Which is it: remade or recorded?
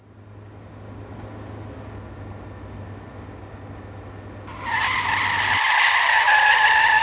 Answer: recorded